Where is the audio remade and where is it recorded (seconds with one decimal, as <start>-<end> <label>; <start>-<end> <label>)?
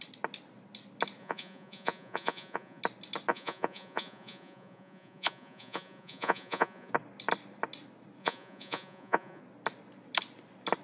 0.0-1.2 recorded; 1.2-2.8 remade; 2.8-3.3 recorded; 3.3-6.9 remade; 6.9-8.2 recorded; 8.2-9.4 remade; 9.4-10.8 recorded